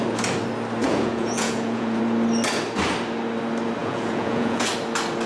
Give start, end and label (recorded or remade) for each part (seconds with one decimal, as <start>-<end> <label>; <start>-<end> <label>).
0.0-0.8 recorded; 0.8-2.0 remade; 2.0-3.8 recorded; 3.8-4.7 remade; 4.7-5.3 recorded